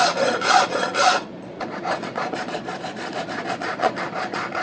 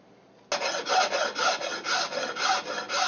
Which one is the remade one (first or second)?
first